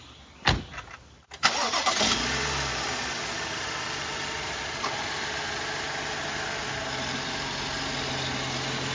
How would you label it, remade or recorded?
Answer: recorded